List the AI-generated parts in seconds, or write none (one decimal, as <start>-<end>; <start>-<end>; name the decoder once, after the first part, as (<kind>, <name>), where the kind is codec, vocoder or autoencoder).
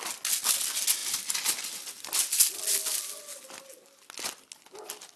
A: none